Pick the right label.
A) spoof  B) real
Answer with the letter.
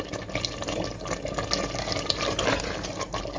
B